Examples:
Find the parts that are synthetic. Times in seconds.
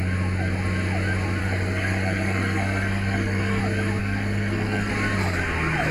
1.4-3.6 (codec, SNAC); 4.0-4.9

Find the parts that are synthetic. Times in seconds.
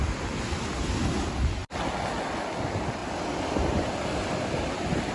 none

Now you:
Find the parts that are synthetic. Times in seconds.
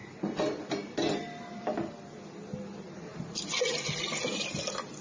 none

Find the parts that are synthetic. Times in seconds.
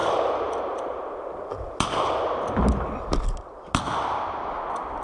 none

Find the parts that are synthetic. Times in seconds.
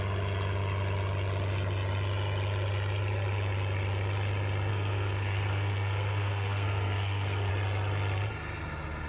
4.7-7.5 (codec, SNAC)